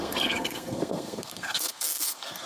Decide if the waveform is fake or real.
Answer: fake